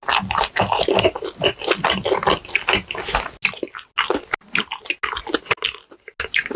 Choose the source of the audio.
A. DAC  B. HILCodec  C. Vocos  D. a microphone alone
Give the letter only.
D